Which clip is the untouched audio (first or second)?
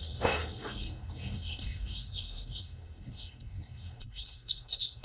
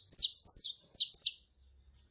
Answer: second